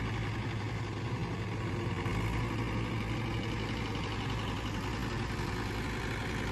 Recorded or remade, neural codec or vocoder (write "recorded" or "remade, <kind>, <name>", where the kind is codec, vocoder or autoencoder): recorded